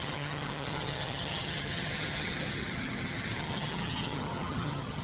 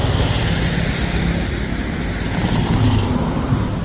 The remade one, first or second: first